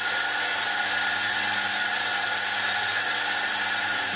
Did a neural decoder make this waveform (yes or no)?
no